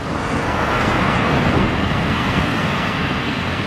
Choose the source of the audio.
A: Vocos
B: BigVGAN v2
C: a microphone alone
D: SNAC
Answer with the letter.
D